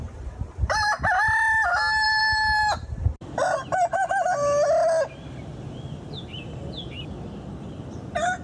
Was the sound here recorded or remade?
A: recorded